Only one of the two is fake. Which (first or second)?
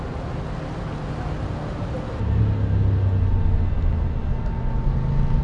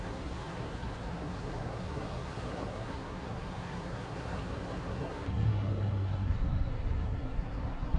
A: second